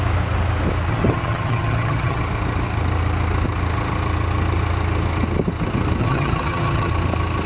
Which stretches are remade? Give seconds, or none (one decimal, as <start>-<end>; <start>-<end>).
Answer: 0.9-2.2; 6.0-6.9